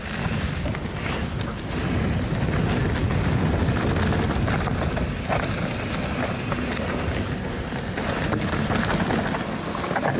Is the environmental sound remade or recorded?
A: recorded